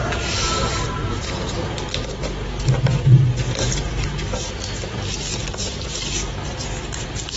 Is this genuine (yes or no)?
yes